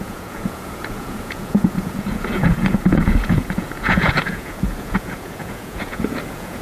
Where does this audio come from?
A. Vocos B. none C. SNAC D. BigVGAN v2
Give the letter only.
A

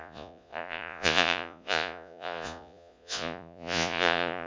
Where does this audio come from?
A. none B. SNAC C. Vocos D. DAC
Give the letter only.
C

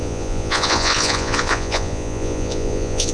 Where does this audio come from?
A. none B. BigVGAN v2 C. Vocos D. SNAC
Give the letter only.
C